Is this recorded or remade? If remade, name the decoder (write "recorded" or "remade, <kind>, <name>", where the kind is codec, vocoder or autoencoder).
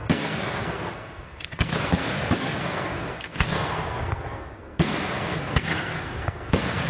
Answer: remade, codec, SNAC